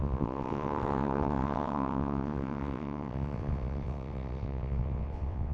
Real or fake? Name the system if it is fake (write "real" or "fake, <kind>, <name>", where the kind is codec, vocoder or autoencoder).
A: fake, vocoder, WaveNeXt